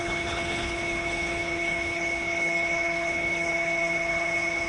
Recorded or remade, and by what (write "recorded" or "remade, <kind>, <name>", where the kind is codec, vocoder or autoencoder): remade, codec, HILCodec